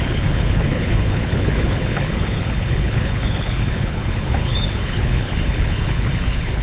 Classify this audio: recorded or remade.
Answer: remade